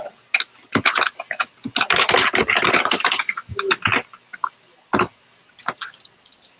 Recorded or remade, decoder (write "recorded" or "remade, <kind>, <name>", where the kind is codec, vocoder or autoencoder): recorded